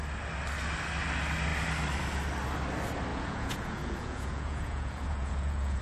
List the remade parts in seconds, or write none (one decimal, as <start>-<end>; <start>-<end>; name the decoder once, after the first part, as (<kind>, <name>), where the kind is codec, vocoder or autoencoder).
3.1-5.8 (vocoder, Vocos)